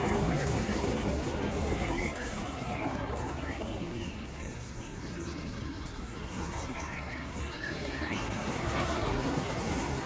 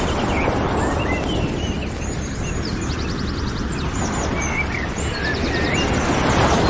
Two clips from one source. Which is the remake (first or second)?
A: first